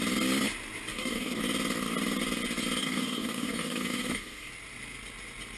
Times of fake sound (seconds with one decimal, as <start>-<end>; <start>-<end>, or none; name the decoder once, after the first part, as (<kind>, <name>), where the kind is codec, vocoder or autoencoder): 0.9-1.4 (codec, DAC); 2.8-4.5